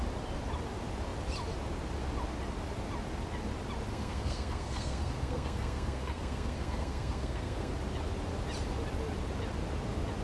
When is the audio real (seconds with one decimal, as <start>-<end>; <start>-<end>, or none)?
0.0-3.9; 7.7-10.2